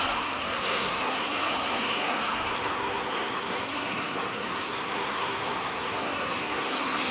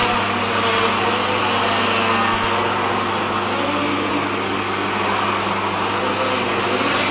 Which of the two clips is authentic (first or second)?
second